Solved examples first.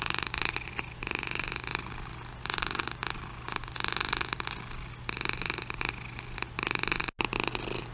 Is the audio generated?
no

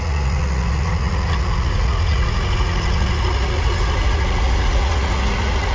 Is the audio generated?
yes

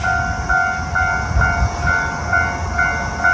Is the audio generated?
no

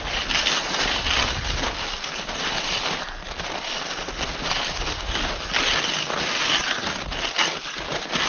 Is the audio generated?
no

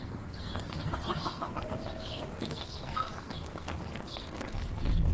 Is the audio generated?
yes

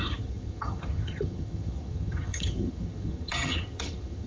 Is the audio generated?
yes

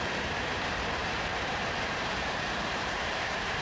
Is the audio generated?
yes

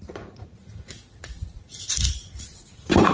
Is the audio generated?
yes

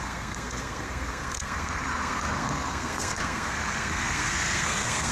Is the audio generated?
yes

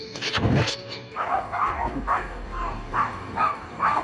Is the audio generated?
yes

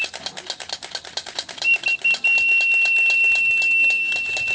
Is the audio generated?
no